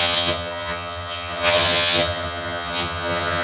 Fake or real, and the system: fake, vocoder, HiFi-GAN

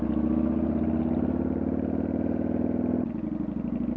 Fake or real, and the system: real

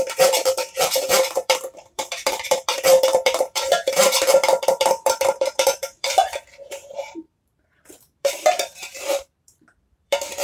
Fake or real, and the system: fake, vocoder, BigVGAN v2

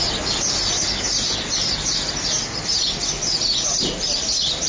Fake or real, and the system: real